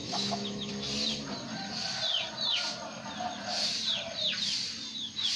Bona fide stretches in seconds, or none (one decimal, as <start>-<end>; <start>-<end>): 0.7-5.4